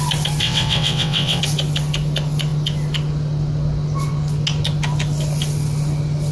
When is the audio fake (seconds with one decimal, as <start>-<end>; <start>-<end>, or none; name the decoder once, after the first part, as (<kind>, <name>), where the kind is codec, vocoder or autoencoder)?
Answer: 0.4-1.4 (vocoder, WaveNeXt)